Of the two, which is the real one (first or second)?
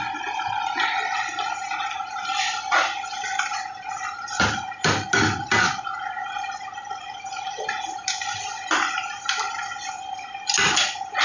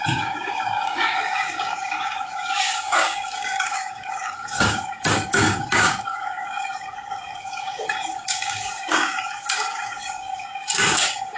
first